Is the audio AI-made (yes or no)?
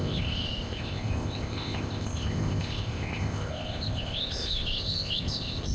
yes